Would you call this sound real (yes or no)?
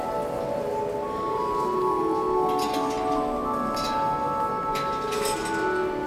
yes